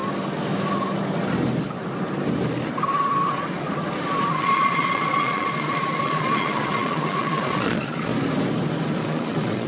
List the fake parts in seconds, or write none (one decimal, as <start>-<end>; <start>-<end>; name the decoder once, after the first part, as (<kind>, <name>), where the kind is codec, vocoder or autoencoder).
4.3-8.1 (vocoder, Vocos); 9.0-9.7